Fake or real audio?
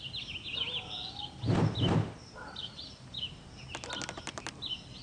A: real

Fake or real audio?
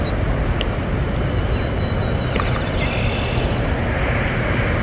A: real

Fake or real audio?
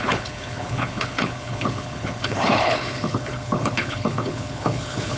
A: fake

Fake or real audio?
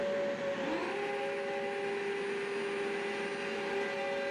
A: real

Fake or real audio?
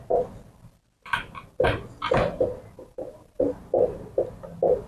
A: real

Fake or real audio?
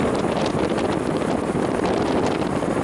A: real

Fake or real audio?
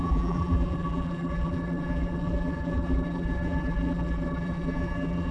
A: fake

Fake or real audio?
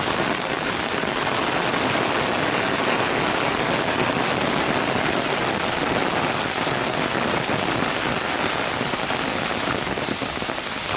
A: real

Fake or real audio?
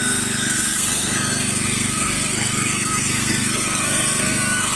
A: fake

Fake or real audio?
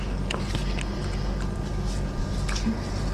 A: real